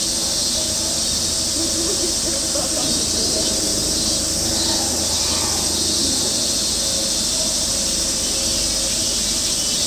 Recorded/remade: recorded